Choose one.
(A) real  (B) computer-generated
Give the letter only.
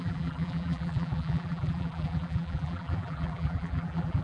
B